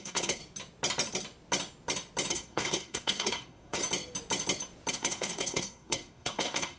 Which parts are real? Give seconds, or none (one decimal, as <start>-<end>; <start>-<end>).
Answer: 0.4-2.3; 3.8-4.9